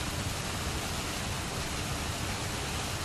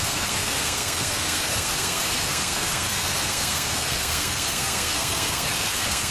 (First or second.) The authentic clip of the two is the first